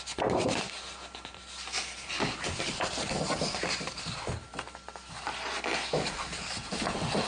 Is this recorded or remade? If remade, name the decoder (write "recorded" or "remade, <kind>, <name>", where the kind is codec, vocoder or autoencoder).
recorded